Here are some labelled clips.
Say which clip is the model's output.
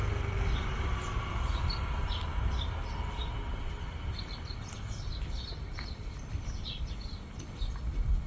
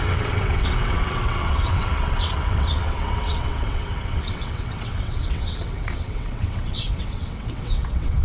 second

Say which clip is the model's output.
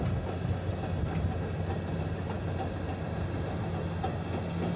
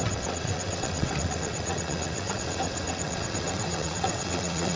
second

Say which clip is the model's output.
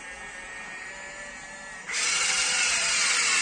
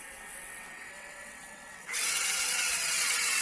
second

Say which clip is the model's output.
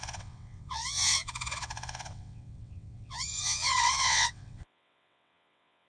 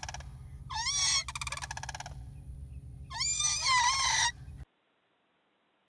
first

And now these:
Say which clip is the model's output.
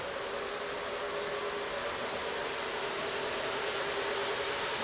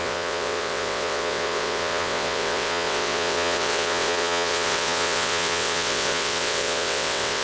second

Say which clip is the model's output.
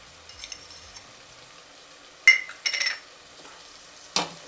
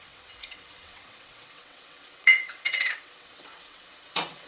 second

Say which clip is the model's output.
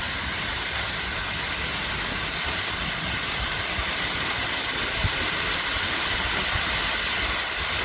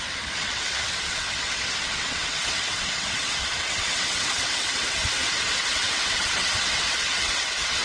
second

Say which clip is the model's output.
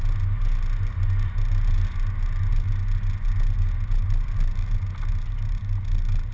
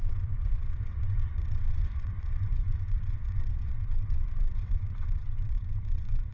second